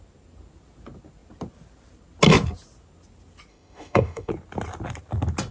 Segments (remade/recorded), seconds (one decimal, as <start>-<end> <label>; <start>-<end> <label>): 0.0-3.5 recorded; 3.5-4.3 remade; 4.3-5.5 recorded